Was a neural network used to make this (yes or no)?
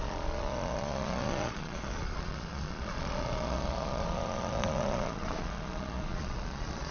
yes